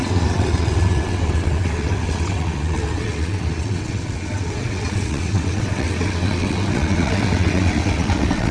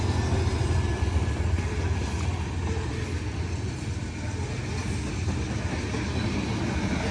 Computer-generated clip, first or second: first